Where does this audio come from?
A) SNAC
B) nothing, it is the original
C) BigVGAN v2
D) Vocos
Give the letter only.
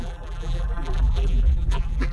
C